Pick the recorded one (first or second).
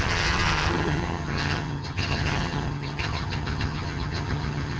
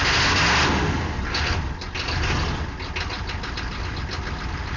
second